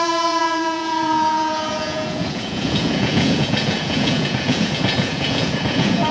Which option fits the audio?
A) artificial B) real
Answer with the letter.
A